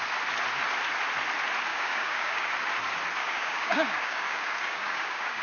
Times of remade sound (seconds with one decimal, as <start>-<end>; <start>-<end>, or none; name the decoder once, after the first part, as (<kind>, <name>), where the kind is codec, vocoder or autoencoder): 1.7-2.5 (codec, DAC); 3.2-5.4